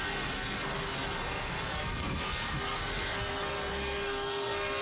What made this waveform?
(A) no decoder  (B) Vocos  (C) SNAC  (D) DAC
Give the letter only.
C